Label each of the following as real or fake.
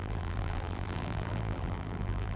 fake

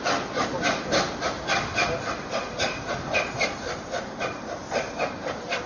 real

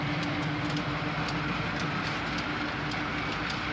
real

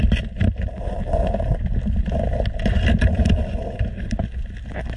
real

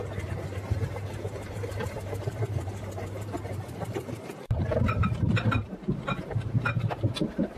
fake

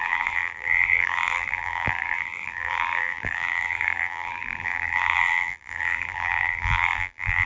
fake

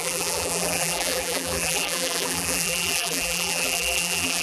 fake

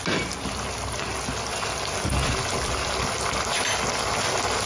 real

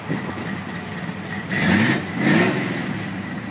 real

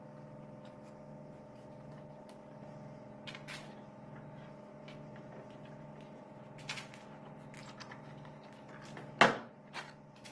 real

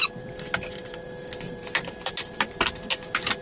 real